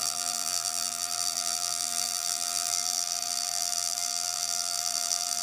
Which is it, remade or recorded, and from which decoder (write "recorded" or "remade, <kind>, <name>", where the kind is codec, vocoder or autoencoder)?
remade, vocoder, BigVGAN v2